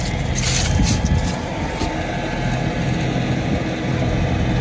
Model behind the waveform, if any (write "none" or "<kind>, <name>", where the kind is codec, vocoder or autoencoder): none